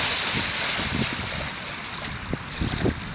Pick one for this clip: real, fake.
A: real